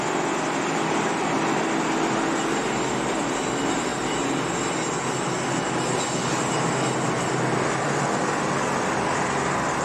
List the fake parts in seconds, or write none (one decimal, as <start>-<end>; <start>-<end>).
none